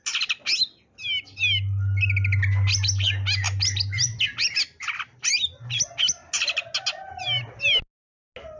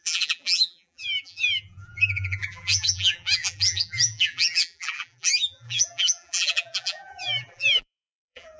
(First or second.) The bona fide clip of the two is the first